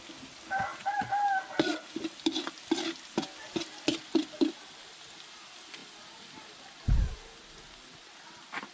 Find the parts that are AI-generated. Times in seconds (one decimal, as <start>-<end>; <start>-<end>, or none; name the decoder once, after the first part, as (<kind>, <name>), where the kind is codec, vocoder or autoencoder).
none